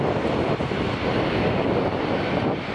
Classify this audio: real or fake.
real